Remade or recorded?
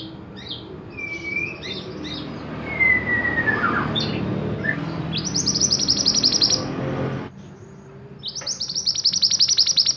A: recorded